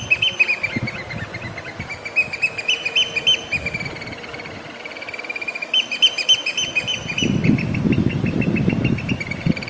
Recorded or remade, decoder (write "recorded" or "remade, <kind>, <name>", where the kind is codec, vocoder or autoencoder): recorded